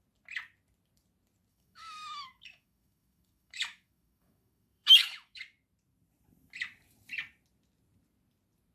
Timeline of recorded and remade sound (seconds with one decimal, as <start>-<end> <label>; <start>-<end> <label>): 0.0-1.5 recorded; 1.5-5.4 remade; 5.4-8.7 recorded